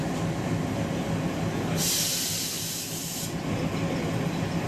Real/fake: real